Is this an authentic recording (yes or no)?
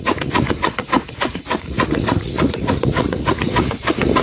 no